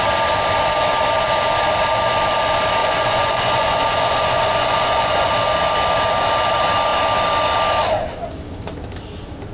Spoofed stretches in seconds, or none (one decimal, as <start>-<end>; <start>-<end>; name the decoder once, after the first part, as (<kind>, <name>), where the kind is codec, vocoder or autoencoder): 2.8-5.3 (vocoder, Vocos)